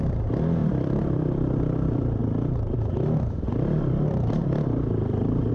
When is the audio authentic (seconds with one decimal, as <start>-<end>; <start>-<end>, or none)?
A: 2.2-5.5